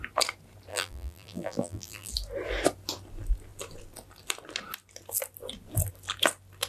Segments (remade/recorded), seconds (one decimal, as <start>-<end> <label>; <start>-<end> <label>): 0.0-0.7 recorded; 0.7-2.1 remade; 2.1-6.7 recorded